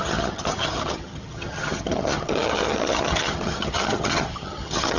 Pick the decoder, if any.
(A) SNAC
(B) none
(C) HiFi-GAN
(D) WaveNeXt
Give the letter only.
C